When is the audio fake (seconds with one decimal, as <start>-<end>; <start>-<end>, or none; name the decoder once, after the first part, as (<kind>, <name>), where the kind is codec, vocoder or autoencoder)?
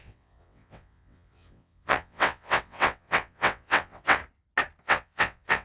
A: 0.0-4.2 (vocoder, WaveNeXt); 4.8-5.6